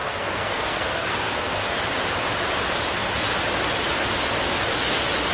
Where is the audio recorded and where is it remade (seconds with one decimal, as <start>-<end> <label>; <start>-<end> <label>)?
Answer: 0.0-1.6 remade; 1.6-5.3 recorded